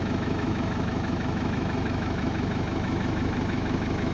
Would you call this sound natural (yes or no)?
no